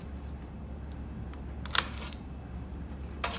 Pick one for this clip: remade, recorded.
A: recorded